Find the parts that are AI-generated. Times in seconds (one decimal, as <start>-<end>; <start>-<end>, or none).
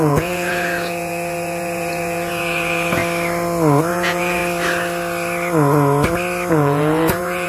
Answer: 0.0-3.0; 3.9-4.4; 6.5-7.5